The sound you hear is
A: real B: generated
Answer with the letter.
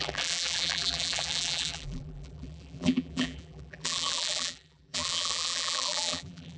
B